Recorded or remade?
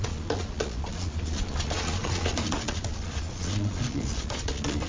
remade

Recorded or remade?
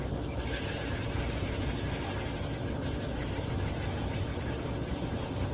recorded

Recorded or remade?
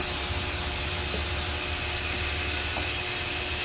recorded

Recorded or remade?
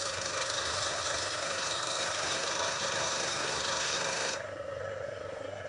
remade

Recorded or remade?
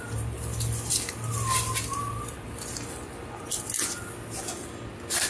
recorded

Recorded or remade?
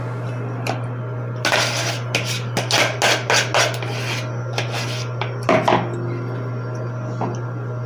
recorded